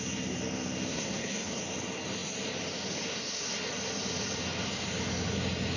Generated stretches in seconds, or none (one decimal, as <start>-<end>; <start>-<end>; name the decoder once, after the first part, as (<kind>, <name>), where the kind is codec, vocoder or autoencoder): 0.9-1.6 (codec, SNAC)